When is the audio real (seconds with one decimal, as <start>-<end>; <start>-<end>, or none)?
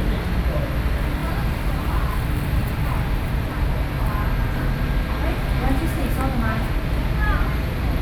0.0-8.0